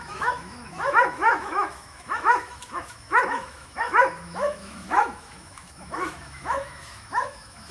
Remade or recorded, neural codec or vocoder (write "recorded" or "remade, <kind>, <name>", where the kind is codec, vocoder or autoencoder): remade, autoencoder, DAC-VAE